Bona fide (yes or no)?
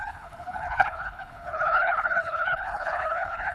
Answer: no